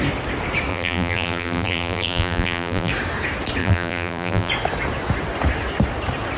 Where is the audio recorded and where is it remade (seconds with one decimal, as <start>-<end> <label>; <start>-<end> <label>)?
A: 0.0-0.7 recorded; 0.7-2.9 remade; 2.9-3.6 recorded; 3.6-4.5 remade; 4.5-6.4 recorded